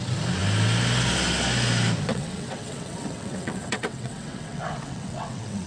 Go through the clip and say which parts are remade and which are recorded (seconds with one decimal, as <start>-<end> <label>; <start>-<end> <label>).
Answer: 0.0-2.1 recorded; 2.1-5.7 remade